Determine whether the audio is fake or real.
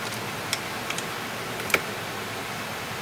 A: real